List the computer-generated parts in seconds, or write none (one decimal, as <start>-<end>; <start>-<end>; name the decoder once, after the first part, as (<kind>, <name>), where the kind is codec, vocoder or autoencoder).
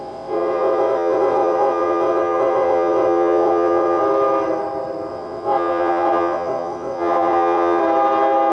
0.0-4.0 (vocoder, WaveNeXt); 5.1-7.8